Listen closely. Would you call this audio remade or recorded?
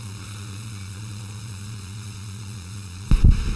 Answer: remade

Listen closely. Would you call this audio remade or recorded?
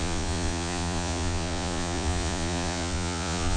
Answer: remade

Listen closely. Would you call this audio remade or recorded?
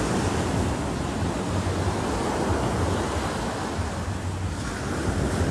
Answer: recorded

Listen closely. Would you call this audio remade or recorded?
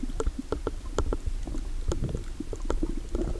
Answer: recorded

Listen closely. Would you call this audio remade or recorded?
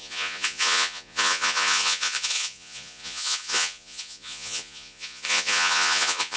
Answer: remade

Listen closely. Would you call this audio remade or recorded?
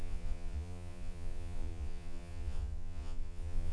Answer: remade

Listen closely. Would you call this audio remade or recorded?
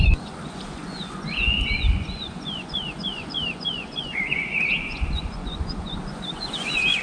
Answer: remade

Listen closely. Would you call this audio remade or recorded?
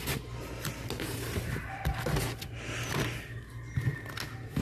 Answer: recorded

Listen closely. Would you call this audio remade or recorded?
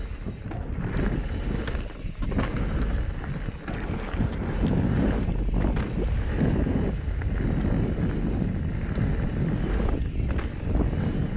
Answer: recorded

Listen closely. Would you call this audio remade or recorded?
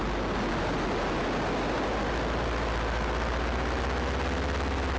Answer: recorded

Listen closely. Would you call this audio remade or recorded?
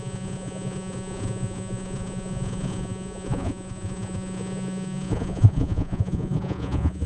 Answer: remade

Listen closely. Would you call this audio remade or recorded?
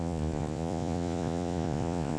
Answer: remade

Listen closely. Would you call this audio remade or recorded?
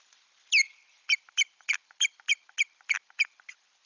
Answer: recorded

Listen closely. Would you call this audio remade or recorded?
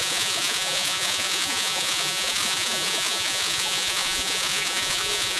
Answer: remade